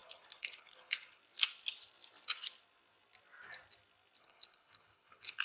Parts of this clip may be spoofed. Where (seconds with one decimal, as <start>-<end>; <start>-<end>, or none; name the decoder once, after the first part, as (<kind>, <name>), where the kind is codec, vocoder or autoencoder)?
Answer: 0.0-1.2 (codec, HILCodec); 4.2-5.4